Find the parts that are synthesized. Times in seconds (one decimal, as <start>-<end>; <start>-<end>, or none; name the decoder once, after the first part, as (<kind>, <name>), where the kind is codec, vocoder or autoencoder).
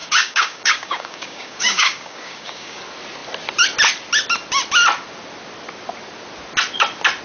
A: 0.0-2.8 (codec, DAC)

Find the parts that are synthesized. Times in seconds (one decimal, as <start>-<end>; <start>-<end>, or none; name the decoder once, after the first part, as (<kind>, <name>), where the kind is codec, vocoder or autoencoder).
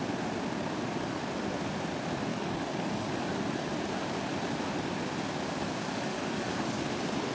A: 2.3-3.1 (codec, DAC); 6.1-6.8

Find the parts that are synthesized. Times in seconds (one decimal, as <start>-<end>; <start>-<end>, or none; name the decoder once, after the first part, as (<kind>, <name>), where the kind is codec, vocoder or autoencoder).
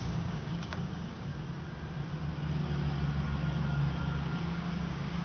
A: 0.0-1.3 (codec, DAC); 3.8-5.2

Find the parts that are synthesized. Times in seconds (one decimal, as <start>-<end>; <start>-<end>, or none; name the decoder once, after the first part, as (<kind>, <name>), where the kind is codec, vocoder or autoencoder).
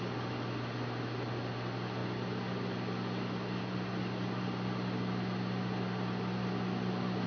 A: none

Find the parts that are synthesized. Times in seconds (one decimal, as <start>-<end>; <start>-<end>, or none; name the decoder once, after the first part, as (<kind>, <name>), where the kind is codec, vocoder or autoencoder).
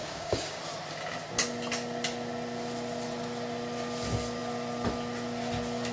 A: 0.0-0.6 (codec, DAC)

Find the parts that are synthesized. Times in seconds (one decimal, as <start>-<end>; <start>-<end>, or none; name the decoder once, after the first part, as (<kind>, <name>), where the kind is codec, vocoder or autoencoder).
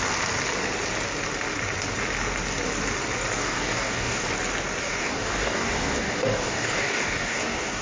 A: 3.4-4.3 (codec, DAC); 4.8-7.8